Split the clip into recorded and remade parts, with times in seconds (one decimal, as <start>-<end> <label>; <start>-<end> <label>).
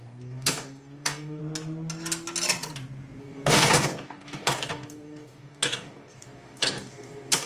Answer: 0.0-1.4 remade; 1.4-3.2 recorded; 3.2-7.5 remade